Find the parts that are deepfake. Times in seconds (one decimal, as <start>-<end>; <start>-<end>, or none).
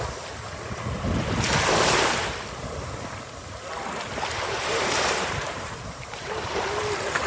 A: 4.3-6.8